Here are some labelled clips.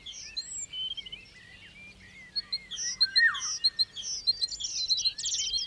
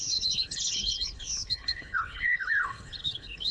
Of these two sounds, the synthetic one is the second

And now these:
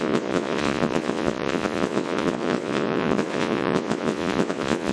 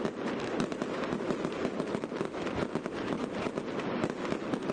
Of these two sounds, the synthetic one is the first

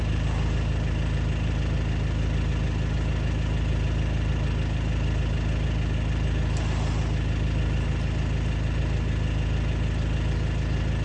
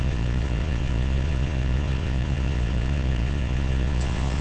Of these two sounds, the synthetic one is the second